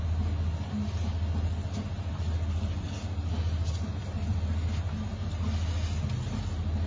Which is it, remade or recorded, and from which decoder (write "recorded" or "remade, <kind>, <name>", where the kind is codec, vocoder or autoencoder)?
recorded